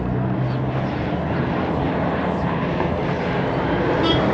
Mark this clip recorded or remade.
recorded